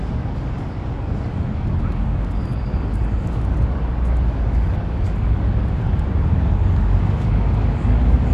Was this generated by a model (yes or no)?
yes